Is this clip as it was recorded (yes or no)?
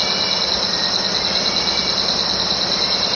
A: yes